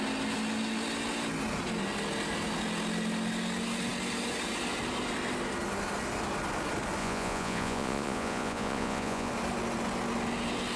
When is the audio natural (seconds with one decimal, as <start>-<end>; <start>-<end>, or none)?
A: 0.0-7.0; 9.3-10.8